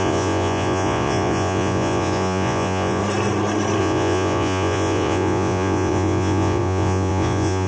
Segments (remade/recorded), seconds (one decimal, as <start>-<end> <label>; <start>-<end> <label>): 0.0-3.0 remade; 3.0-3.8 recorded; 3.8-7.7 remade